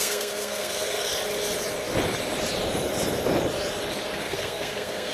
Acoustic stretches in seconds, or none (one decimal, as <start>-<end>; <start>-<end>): 1.1-4.2